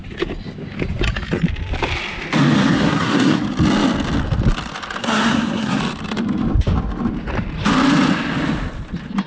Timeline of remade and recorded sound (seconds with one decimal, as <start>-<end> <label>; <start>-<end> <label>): 0.0-2.7 recorded; 2.7-3.4 remade; 3.4-5.0 recorded; 5.0-5.8 remade; 5.8-9.3 recorded